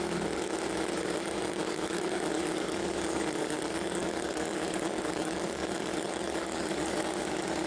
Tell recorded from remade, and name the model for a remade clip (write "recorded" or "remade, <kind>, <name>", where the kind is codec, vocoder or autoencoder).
remade, codec, DAC